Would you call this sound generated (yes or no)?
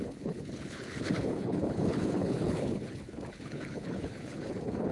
yes